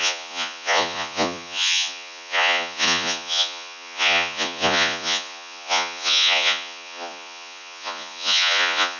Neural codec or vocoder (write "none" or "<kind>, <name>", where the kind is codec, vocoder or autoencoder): vocoder, Vocos